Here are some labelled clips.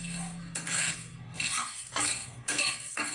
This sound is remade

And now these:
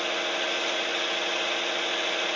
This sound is recorded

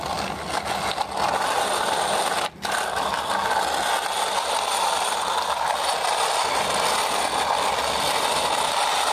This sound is recorded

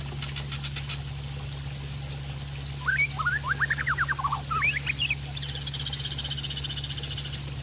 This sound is recorded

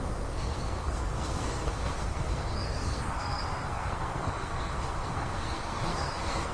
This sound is remade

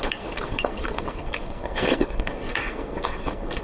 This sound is remade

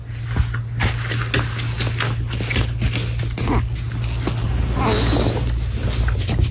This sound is recorded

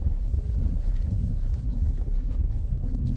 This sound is remade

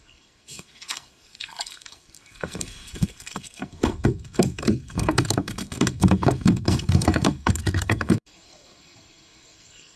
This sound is remade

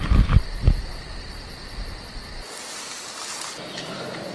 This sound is recorded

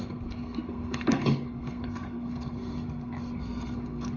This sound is remade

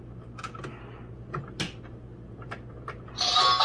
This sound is recorded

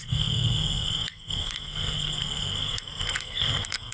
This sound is remade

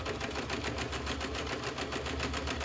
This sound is recorded